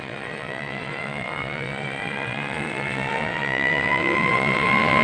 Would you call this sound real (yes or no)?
no